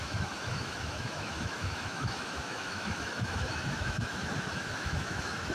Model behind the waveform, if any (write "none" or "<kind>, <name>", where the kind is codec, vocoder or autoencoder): autoencoder, DAC-VAE